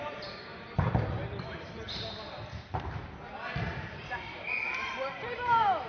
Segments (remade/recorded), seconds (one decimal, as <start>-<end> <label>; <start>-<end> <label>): 0.0-0.5 remade; 0.5-4.0 recorded; 4.0-5.9 remade